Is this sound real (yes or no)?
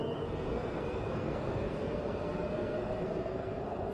no